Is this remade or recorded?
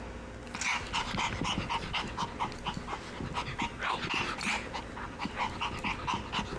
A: recorded